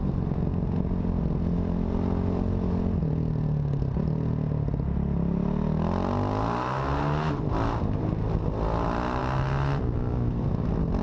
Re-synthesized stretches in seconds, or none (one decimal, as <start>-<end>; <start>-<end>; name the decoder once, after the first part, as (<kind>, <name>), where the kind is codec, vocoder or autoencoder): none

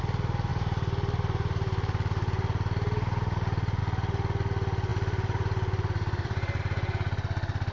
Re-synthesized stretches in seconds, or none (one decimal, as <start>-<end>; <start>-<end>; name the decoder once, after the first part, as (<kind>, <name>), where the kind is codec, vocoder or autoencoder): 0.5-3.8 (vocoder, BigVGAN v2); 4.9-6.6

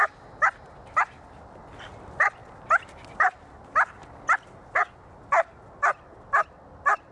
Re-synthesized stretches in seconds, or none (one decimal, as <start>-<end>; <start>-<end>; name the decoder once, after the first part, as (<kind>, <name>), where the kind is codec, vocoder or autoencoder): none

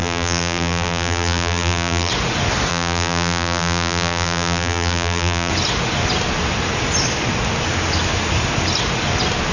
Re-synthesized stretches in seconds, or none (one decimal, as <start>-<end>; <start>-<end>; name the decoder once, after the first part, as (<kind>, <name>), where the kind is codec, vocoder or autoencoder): 0.0-2.1 (vocoder, BigVGAN v2); 2.7-5.5